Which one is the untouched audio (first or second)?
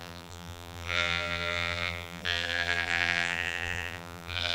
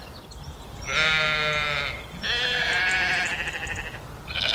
second